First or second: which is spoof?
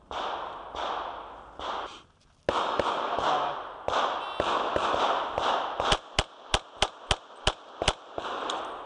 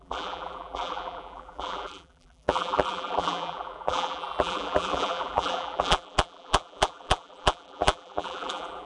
second